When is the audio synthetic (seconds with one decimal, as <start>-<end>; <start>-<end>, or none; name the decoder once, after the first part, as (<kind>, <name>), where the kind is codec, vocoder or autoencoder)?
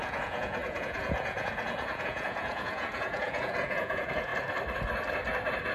0.0-4.3 (vocoder, Vocos)